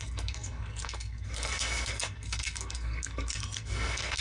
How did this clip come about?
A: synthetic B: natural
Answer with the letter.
A